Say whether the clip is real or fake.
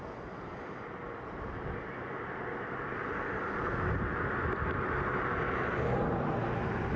real